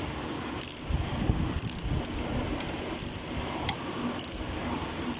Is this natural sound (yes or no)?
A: yes